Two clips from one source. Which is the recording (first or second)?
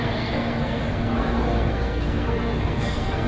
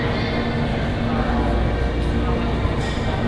second